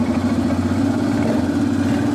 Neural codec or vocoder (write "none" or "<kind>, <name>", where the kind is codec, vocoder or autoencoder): none